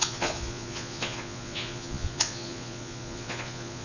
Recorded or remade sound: remade